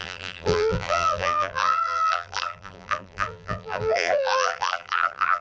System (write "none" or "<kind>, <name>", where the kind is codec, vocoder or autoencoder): vocoder, BigVGAN v2